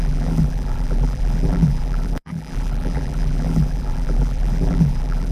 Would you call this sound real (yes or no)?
no